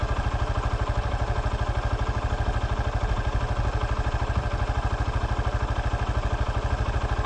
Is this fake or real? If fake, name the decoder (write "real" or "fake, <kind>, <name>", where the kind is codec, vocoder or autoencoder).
real